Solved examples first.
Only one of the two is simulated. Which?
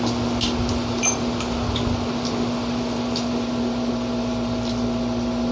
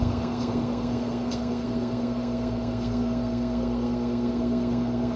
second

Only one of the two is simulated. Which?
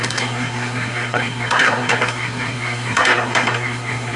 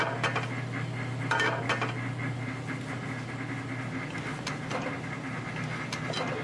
first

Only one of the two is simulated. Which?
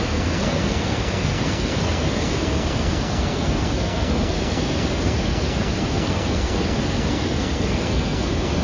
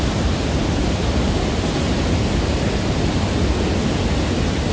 first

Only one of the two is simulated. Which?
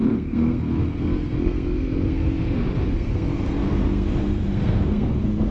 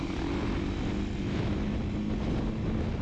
first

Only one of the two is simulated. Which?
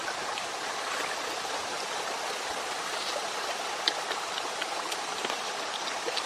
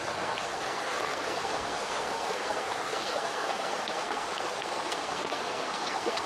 second